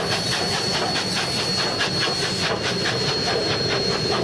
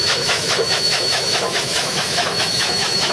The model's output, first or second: second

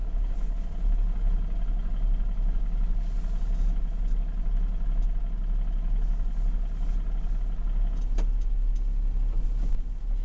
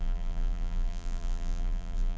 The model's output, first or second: second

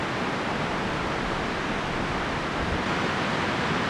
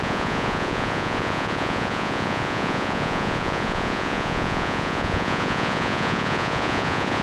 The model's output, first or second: second